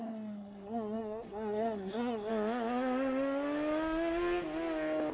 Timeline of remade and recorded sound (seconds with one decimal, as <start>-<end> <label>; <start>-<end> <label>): 0.0-2.3 remade; 2.3-5.1 recorded